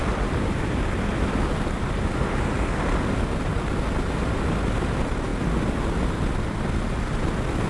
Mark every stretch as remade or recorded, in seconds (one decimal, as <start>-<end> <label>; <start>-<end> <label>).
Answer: 0.0-7.7 recorded